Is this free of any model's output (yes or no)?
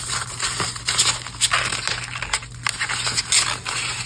yes